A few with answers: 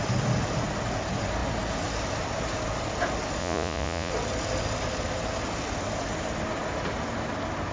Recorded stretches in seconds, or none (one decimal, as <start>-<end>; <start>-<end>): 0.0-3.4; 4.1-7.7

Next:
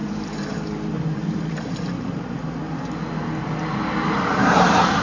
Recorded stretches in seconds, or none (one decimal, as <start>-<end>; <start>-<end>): 3.0-5.0

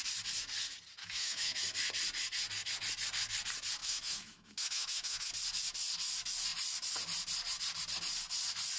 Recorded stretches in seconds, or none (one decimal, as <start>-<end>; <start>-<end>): 0.0-1.0; 1.6-3.8; 5.3-8.8

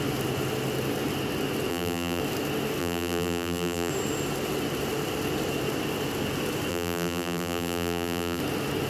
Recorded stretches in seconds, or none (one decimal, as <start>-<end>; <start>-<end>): 0.0-1.7; 2.2-2.8; 3.9-6.7; 8.4-8.9

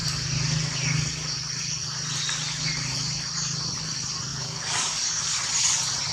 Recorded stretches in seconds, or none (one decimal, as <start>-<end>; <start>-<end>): 0.0-4.3; 5.2-6.1